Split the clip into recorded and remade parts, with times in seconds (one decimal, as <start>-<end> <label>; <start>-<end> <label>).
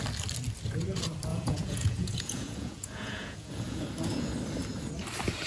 0.0-1.3 recorded; 1.3-3.8 remade; 3.8-5.5 recorded